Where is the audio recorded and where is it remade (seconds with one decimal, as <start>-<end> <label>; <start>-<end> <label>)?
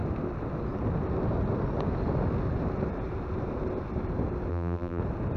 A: 0.0-4.5 recorded; 4.5-5.0 remade; 5.0-5.4 recorded